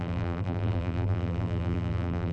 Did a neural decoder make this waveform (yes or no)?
yes